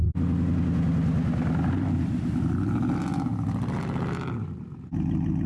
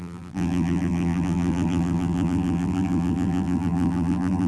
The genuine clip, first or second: first